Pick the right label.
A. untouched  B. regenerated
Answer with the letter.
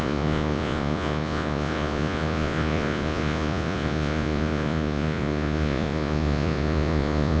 B